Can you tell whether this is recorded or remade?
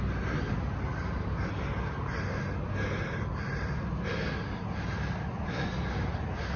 recorded